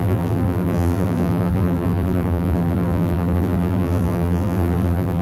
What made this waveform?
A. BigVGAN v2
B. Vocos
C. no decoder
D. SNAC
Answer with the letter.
A